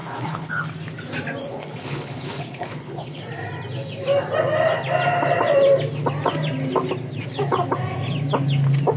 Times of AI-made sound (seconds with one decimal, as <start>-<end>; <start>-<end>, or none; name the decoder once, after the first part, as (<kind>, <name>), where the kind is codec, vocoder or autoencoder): 0.0-0.6 (codec, HILCodec); 1.4-3.2